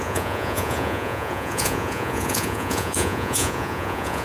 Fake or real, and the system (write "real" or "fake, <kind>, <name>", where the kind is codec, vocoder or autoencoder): fake, vocoder, Vocos